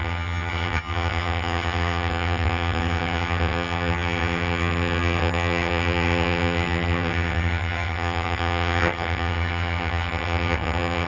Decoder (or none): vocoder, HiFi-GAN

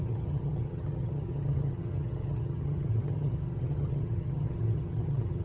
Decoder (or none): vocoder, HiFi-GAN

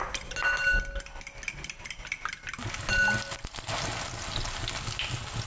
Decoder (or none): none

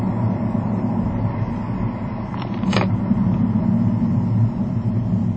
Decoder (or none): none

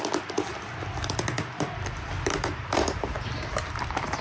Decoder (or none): none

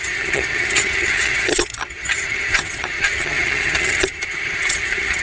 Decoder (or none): vocoder, HiFi-GAN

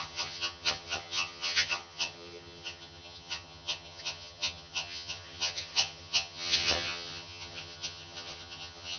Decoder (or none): vocoder, HiFi-GAN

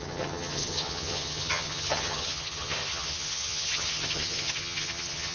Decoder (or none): vocoder, HiFi-GAN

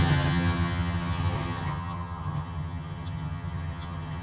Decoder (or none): vocoder, HiFi-GAN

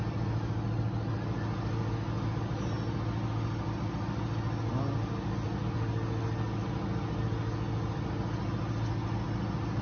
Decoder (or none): none